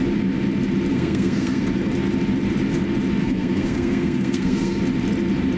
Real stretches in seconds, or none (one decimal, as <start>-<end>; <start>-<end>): 0.0-0.9; 1.6-3.2; 4.8-5.6